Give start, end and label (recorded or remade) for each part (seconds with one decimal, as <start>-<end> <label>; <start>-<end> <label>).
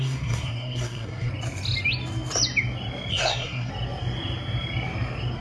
0.0-1.3 remade; 1.3-3.1 recorded; 3.1-3.7 remade; 3.7-5.4 recorded